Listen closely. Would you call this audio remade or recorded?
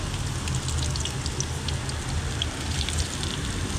recorded